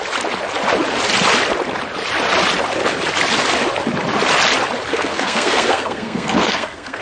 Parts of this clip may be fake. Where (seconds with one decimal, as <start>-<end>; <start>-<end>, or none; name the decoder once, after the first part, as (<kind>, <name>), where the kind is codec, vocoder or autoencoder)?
4.9-7.0 (codec, SNAC)